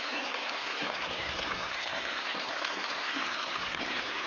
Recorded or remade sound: remade